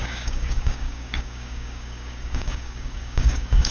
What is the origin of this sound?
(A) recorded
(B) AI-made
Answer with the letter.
B